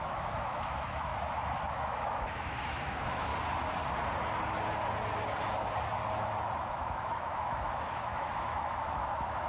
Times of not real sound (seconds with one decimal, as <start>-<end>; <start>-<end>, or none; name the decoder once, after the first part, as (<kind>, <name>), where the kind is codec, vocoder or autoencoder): 0.0-1.1 (autoencoder, DAC-VAE); 1.7-3.3; 6.7-9.5